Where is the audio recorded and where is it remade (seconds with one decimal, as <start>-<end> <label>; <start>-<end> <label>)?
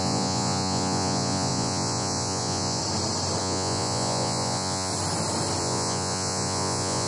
0.0-2.8 remade; 2.8-3.4 recorded; 3.4-4.9 remade; 4.9-5.6 recorded; 5.6-7.1 remade